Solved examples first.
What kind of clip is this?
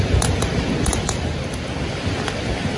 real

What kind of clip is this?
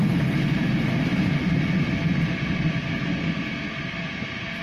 real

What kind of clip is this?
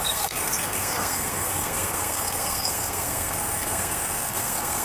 fake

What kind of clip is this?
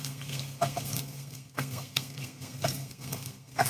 fake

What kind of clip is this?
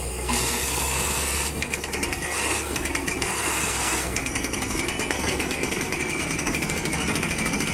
fake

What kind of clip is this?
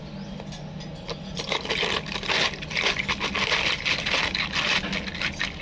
real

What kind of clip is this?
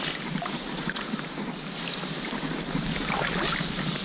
real